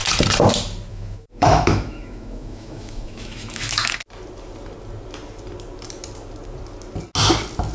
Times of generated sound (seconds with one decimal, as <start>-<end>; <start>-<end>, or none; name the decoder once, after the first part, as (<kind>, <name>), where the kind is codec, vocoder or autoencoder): 0.9-3.9 (autoencoder, DAC-VAE)